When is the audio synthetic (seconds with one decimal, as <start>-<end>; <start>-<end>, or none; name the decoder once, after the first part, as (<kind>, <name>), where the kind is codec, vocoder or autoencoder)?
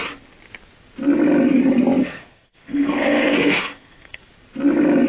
2.0-4.3 (codec, SNAC)